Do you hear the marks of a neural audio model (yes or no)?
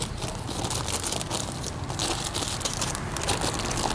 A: no